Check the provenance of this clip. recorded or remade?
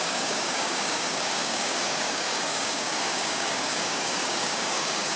remade